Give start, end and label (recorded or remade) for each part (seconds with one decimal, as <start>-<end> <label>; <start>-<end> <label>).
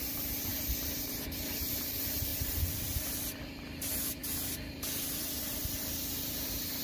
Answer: 0.0-2.3 recorded; 2.3-3.5 remade; 3.5-4.2 recorded; 4.2-6.8 remade